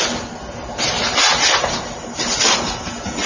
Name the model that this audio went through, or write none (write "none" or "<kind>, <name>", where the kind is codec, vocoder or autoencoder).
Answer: none